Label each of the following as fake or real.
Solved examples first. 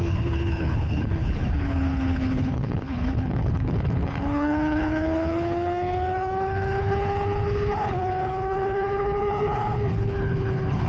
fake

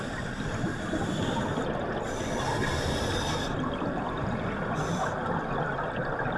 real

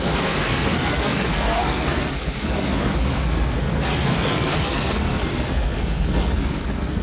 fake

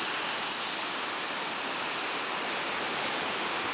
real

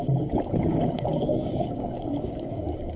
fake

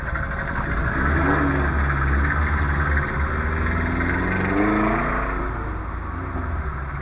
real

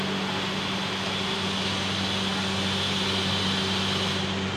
real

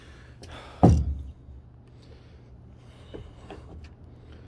real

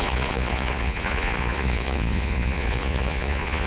fake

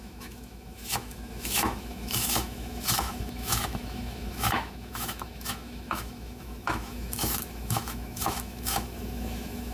fake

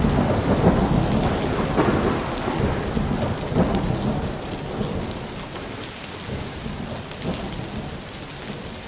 real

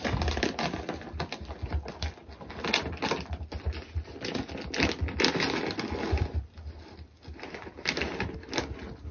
real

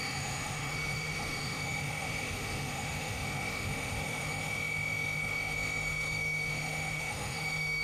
fake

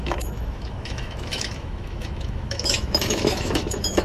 fake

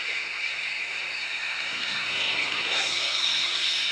fake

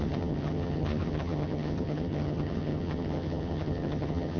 fake